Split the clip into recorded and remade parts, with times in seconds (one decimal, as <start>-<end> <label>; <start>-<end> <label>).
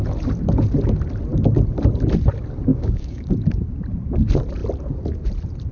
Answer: 0.0-2.7 recorded; 2.7-3.3 remade; 3.3-5.7 recorded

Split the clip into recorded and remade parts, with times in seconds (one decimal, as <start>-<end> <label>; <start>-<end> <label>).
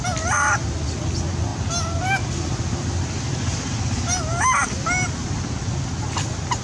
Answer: 0.0-6.6 recorded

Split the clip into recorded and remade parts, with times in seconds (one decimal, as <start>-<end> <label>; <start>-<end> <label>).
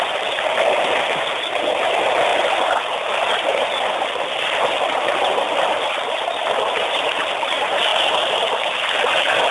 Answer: 0.0-7.9 remade; 7.9-8.5 recorded; 8.5-9.5 remade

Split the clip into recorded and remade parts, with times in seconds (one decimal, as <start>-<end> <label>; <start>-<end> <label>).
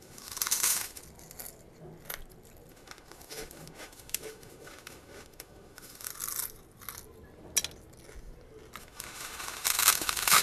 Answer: 0.0-1.0 remade; 1.0-2.7 recorded; 2.7-6.1 remade; 6.1-8.8 recorded; 8.8-10.4 remade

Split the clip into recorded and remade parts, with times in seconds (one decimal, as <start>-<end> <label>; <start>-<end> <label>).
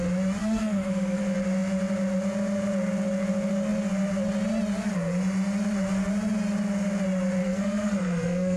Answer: 0.0-0.4 recorded; 0.4-1.2 remade; 1.2-7.4 recorded; 7.4-8.6 remade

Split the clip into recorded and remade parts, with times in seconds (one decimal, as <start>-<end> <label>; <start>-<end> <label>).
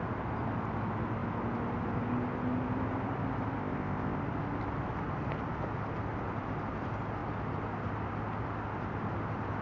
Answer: 0.0-3.6 recorded; 3.6-4.2 remade; 4.2-9.6 recorded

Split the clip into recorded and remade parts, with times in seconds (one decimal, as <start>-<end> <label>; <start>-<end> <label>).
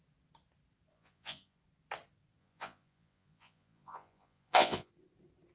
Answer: 0.0-0.9 recorded; 0.9-1.6 remade; 1.6-2.4 recorded; 2.4-4.9 remade; 4.9-5.5 recorded